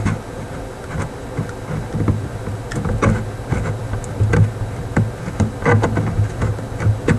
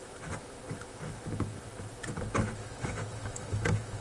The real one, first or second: first